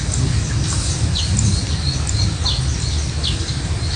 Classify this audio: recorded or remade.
recorded